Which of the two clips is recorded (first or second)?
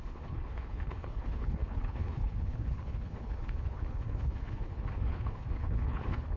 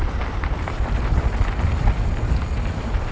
second